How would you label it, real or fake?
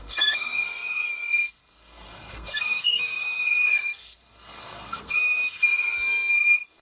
fake